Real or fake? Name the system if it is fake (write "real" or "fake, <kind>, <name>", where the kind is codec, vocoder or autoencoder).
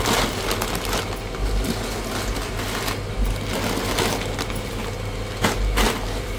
real